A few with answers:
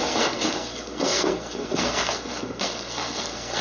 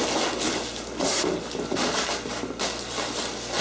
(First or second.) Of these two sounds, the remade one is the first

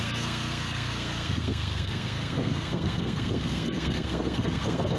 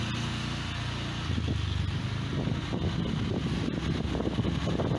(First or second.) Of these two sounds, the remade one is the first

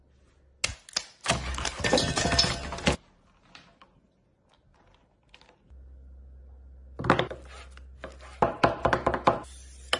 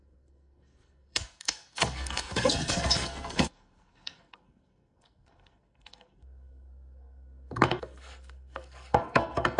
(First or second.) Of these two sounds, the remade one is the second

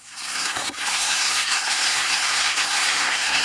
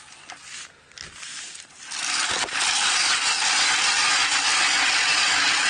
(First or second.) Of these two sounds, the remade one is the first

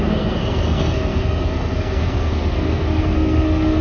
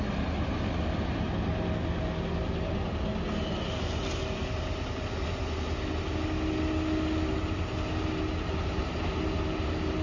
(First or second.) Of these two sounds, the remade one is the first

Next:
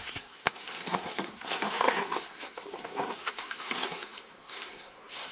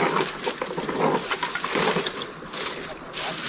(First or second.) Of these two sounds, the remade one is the first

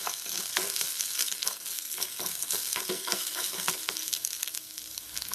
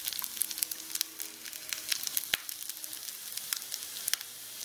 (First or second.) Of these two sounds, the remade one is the first